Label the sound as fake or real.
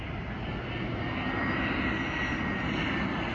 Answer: real